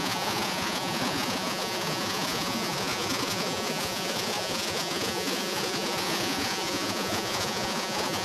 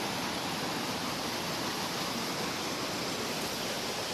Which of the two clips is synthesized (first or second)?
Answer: first